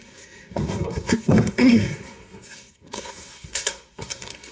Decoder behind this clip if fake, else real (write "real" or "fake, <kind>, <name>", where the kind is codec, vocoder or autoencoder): fake, codec, SNAC